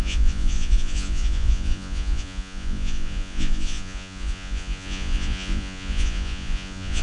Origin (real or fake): fake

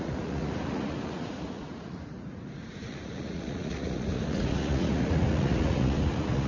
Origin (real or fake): fake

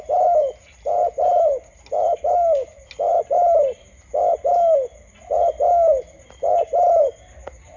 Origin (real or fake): real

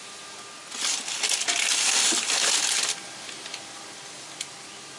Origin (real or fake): real